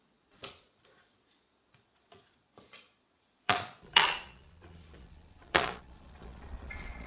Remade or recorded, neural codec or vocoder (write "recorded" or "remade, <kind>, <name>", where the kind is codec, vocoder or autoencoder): remade, vocoder, Vocos